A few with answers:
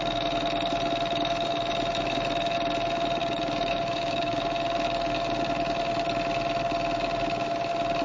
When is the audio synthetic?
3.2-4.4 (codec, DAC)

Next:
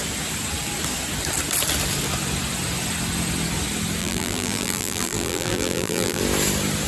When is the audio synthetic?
4.0-6.2 (vocoder, BigVGAN v2)

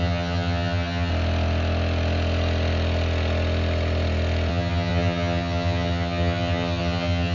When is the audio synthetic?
0.0-1.1 (vocoder, HiFi-GAN); 4.5-7.3

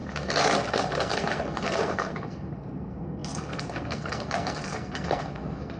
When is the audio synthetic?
0.0-5.8 (codec, SNAC)